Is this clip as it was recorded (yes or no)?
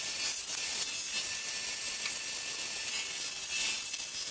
yes